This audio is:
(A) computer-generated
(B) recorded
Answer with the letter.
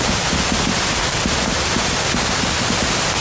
B